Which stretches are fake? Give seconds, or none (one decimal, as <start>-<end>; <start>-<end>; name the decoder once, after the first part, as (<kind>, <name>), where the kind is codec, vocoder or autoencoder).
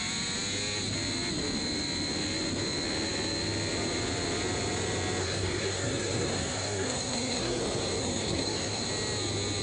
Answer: 5.2-7.6 (codec, SNAC); 8.0-8.9